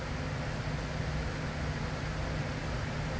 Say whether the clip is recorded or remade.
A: recorded